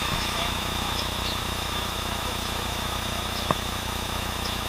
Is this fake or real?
fake